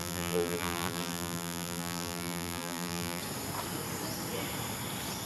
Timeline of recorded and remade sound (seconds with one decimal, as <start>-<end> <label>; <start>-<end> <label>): 0.0-3.2 remade; 3.2-5.3 recorded